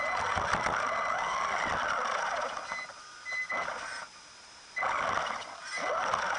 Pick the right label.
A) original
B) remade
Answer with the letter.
A